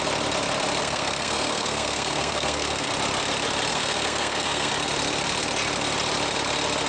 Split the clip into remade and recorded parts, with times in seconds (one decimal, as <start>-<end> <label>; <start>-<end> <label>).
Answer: 0.0-0.8 recorded; 0.8-2.9 remade; 2.9-3.7 recorded; 3.7-4.7 remade; 4.7-6.9 recorded